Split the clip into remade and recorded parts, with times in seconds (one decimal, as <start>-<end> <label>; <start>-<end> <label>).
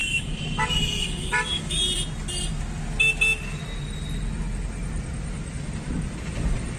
0.0-1.8 remade; 1.8-6.8 recorded